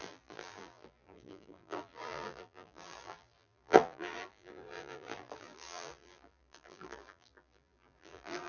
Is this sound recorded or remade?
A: remade